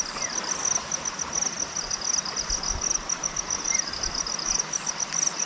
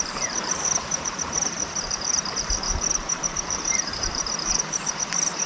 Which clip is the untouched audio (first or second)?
first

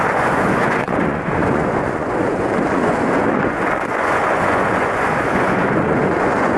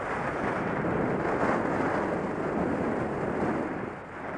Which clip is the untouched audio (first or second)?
second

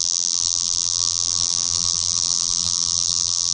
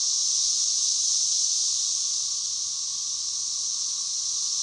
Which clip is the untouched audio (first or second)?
second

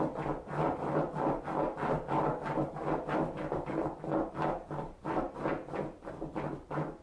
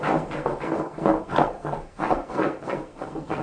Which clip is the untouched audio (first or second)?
first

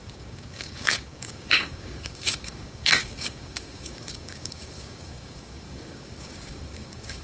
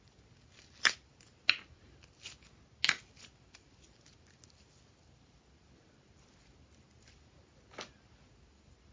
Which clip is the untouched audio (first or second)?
second